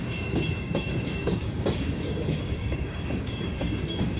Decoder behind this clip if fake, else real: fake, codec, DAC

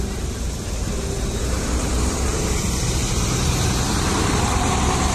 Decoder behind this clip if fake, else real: fake, vocoder, BigVGAN v2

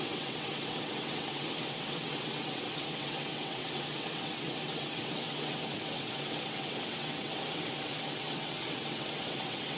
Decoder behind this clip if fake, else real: fake, vocoder, WaveNeXt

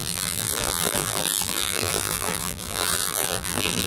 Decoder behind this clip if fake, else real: fake, vocoder, BigVGAN v2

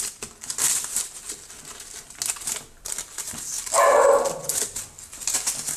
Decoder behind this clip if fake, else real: real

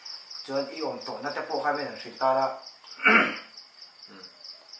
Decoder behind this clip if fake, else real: real